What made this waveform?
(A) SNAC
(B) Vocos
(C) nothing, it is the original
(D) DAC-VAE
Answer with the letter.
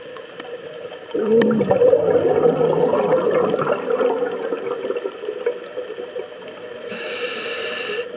C